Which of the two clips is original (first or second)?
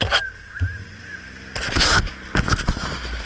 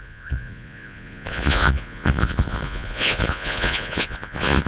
first